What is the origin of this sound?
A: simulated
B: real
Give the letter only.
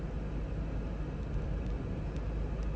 B